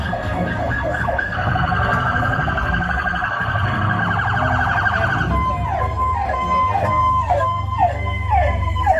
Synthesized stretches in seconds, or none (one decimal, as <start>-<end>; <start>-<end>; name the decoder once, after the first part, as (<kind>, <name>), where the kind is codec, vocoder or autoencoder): 0.0-4.0 (codec, SNAC); 5.8-9.0